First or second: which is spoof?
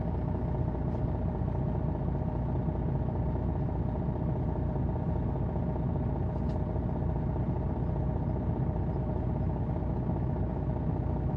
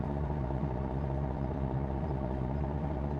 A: second